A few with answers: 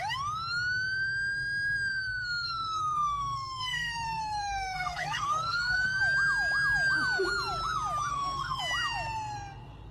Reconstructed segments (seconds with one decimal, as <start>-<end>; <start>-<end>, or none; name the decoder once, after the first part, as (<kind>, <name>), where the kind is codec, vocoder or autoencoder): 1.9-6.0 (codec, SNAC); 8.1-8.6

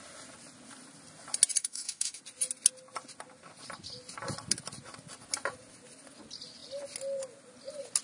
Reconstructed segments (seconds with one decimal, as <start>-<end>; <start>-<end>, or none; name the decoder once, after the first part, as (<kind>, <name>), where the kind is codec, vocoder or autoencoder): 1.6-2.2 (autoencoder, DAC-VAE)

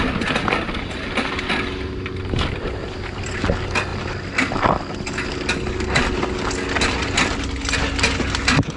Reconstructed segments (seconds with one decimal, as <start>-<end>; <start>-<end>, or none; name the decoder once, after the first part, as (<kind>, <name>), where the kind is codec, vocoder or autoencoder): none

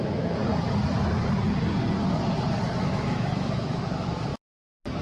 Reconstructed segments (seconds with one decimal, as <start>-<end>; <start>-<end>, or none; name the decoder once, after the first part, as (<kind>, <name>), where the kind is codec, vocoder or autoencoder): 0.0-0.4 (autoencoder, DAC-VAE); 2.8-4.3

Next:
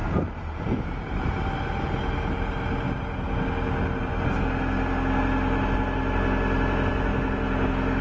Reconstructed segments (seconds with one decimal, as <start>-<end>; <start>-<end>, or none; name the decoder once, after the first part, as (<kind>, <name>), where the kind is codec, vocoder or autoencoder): none

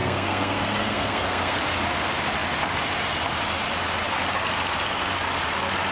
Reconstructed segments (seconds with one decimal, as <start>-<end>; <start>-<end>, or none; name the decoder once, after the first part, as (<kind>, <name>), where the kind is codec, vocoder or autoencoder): 0.0-1.6 (codec, SNAC)

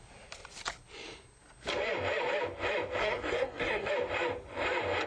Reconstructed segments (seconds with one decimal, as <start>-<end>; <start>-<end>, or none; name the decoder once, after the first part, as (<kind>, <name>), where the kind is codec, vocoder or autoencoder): 3.0-3.9 (codec, SNAC)

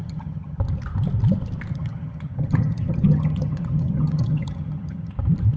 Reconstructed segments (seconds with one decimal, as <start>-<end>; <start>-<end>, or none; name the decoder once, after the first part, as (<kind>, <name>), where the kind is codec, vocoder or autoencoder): 0.0-0.6 (vocoder, HiFi-GAN); 1.7-5.1